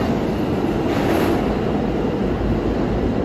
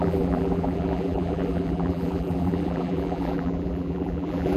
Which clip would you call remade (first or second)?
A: second